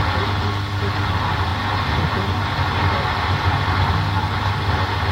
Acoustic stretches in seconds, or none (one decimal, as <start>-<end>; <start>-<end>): 0.0-5.1